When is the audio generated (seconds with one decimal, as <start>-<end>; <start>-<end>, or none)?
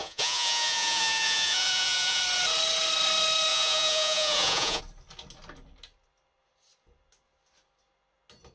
0.0-2.2; 3.5-4.8